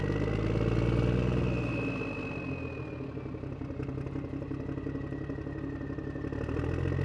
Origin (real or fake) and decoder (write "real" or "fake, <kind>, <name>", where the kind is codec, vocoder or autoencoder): real